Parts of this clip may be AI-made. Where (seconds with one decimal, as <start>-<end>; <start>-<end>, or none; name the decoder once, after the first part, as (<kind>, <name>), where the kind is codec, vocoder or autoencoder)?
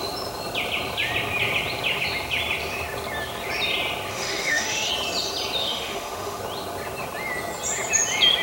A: 4.1-4.9 (autoencoder, DAC-VAE); 5.6-6.4